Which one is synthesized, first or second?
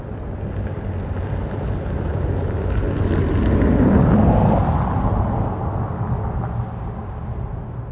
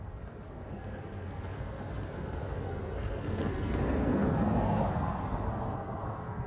second